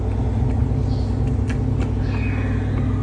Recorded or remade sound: recorded